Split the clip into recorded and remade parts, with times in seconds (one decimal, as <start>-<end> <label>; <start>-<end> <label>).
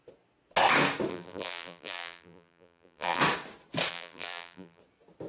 0.0-1.1 recorded; 1.1-3.2 remade; 3.2-3.9 recorded; 3.9-4.8 remade; 4.8-5.3 recorded